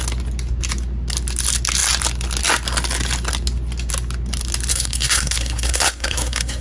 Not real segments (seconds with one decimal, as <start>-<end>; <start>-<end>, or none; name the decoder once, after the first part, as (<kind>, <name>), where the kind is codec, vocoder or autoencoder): 4.7-6.6 (codec, SNAC)